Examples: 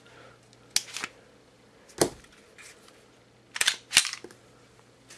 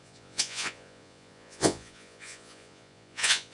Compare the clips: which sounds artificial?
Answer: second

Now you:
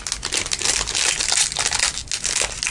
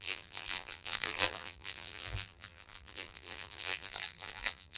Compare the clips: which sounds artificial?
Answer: second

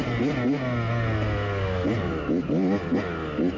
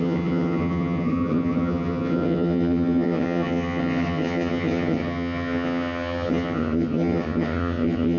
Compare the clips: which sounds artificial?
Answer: second